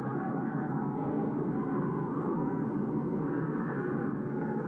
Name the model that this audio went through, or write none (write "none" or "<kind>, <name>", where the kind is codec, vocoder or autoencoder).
codec, SNAC